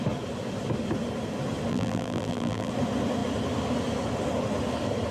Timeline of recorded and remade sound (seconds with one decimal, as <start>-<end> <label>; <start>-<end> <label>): 0.0-1.7 recorded; 1.7-2.7 remade; 2.7-5.1 recorded